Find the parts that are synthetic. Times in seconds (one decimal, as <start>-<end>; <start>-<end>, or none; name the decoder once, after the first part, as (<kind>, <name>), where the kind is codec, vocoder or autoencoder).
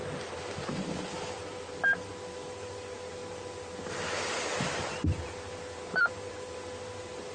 none